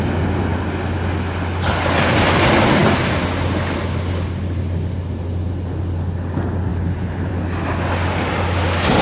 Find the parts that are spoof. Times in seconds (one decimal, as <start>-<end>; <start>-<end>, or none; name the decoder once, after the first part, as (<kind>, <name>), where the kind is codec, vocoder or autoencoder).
6.7-7.3 (codec, HILCodec)